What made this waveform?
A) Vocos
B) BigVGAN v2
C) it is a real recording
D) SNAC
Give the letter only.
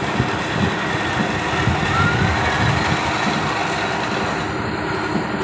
C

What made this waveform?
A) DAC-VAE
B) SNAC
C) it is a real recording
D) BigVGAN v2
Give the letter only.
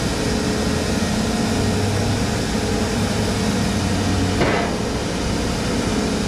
C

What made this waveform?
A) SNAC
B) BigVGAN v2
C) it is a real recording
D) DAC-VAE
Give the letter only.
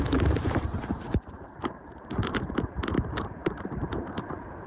B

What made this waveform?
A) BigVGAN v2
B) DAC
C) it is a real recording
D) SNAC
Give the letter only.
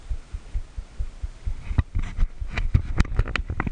C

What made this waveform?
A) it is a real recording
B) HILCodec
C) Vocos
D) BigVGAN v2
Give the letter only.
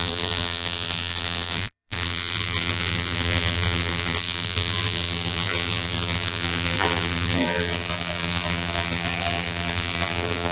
D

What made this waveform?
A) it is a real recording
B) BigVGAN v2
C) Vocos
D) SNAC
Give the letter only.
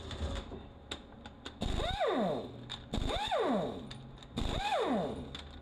A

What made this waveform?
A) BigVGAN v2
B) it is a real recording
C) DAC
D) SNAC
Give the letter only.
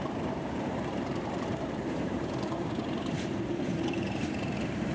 A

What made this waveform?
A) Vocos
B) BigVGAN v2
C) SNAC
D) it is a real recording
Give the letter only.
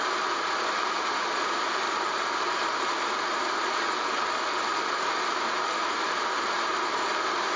B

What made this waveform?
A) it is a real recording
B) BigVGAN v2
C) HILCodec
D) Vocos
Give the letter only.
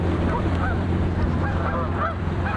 B